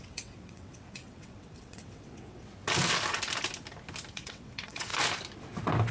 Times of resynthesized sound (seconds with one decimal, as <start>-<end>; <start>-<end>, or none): 0.0-2.5; 4.1-4.9